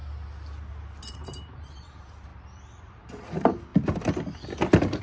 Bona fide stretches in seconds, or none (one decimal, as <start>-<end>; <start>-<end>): 0.0-1.1; 3.7-5.0

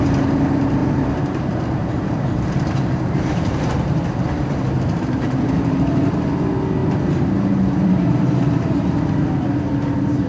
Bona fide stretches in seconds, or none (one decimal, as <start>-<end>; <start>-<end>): 0.0-0.8; 6.1-6.8

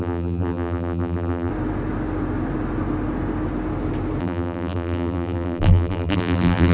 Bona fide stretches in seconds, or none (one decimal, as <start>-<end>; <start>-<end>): 1.5-4.2

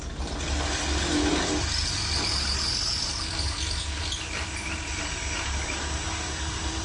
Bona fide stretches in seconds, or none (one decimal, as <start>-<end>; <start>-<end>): 0.0-6.8

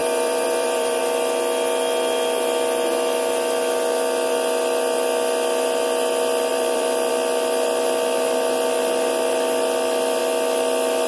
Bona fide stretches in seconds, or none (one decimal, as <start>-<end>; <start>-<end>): 1.0-6.5; 7.1-11.1